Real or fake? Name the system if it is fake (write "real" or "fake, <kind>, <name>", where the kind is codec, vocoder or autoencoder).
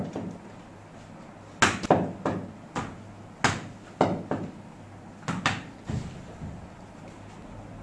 real